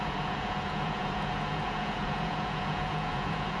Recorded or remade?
remade